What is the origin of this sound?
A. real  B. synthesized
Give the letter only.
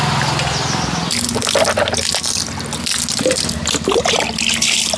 A